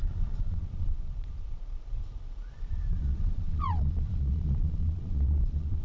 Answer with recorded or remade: remade